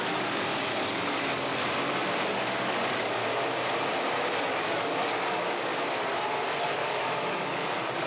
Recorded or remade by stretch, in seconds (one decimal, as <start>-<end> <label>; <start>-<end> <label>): 0.0-1.5 remade; 1.5-2.3 recorded; 2.3-3.2 remade; 3.2-4.5 recorded; 4.5-5.7 remade; 5.7-6.6 recorded; 6.6-8.1 remade